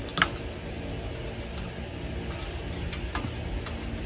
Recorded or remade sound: recorded